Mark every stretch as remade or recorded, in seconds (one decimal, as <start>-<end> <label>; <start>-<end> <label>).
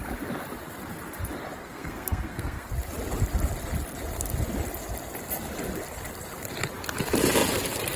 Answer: 0.0-1.6 recorded; 1.6-2.7 remade; 2.7-8.0 recorded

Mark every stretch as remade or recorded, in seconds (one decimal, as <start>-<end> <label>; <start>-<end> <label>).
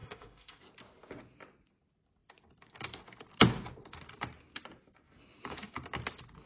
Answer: 0.0-0.6 remade; 0.6-6.5 recorded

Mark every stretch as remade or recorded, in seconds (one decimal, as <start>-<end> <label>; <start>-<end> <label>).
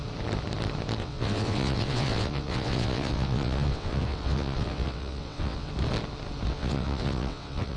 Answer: 0.0-1.0 recorded; 1.0-5.7 remade; 5.7-6.5 recorded; 6.5-7.8 remade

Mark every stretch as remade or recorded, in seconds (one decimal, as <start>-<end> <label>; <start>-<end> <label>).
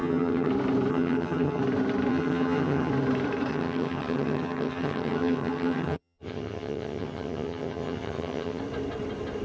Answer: 0.0-0.5 remade; 0.5-0.9 recorded; 0.9-1.6 remade; 1.6-2.1 recorded; 2.1-2.9 remade; 2.9-3.5 recorded; 3.5-8.6 remade; 8.6-9.4 recorded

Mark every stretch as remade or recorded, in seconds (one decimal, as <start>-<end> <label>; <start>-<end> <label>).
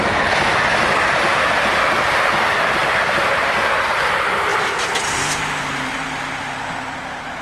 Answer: 0.0-7.4 recorded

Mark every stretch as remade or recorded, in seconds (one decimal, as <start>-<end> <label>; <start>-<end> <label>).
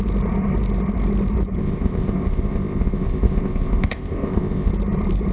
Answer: 0.0-1.6 recorded; 1.6-4.7 remade; 4.7-5.3 recorded